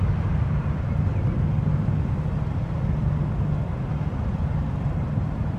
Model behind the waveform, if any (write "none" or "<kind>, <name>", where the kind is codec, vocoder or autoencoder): none